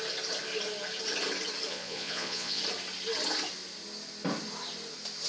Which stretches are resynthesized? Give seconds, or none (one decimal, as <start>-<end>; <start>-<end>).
1.7-2.6